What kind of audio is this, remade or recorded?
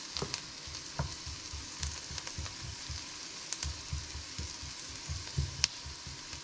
recorded